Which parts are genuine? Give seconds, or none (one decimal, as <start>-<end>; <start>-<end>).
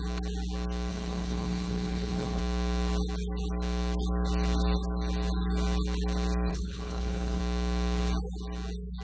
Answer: 0.0-0.9; 2.4-6.5; 7.4-9.0